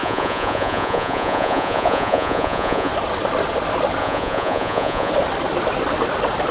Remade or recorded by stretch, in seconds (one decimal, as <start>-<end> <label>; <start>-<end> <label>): 0.0-2.9 remade; 2.9-4.0 recorded; 4.0-5.1 remade; 5.1-6.5 recorded